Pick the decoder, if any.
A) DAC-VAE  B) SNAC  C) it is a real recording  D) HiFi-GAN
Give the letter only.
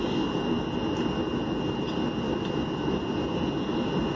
C